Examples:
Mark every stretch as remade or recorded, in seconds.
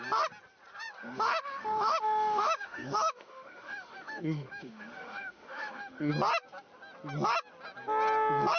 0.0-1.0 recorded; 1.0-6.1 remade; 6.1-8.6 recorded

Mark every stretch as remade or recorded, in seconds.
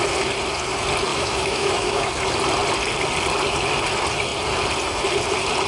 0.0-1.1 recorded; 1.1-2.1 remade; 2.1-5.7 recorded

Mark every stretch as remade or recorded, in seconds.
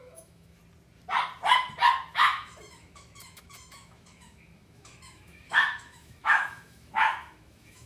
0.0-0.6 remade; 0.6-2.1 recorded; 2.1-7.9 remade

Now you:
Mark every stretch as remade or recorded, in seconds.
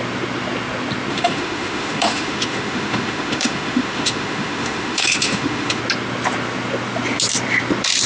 0.0-1.1 recorded; 1.1-5.8 remade; 5.8-8.1 recorded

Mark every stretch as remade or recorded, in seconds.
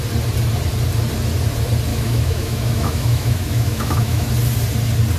0.0-1.9 recorded; 1.9-4.3 remade; 4.3-5.2 recorded